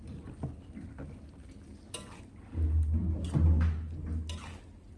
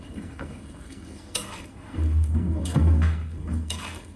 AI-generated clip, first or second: second